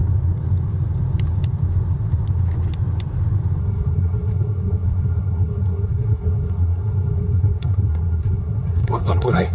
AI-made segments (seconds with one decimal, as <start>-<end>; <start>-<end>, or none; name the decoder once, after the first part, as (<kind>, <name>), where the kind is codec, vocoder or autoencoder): 3.6-9.5 (codec, SNAC)